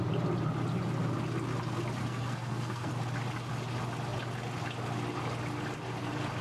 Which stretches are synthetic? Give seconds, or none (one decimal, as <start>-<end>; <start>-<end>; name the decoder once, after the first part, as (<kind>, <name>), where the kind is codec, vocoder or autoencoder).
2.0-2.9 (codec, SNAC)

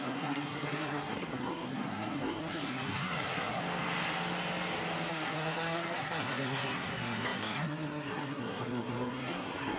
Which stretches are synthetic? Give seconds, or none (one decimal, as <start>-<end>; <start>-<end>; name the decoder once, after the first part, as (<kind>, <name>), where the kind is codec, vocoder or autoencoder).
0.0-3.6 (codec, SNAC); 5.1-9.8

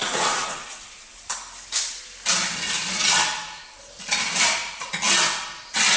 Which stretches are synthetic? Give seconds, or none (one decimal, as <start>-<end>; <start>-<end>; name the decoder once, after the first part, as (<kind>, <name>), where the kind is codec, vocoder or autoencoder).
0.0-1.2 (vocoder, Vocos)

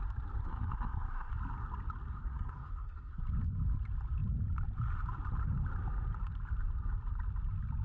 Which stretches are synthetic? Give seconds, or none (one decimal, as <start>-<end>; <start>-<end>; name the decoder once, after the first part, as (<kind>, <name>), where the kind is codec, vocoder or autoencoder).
0.4-1.3 (codec, SNAC); 2.1-3.2